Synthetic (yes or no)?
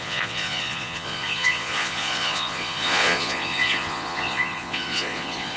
yes